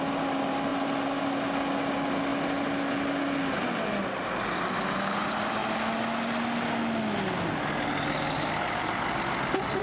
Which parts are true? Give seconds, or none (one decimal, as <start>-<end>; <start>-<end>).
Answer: 0.0-9.8